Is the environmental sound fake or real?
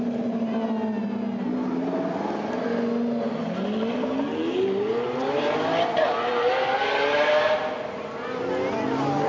real